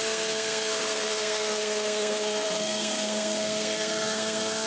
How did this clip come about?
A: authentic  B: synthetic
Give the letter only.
B